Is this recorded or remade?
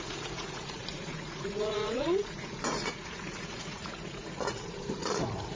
remade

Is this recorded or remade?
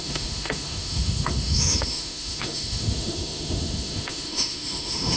remade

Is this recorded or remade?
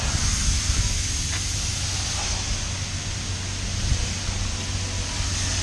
recorded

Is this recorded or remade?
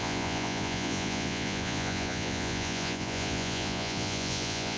remade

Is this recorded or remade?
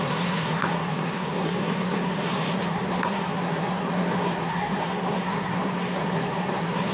remade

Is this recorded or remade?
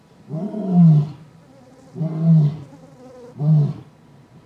recorded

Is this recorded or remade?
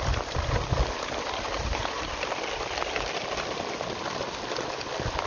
recorded